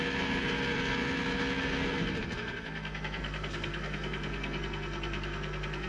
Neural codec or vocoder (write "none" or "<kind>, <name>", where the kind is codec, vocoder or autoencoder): codec, SNAC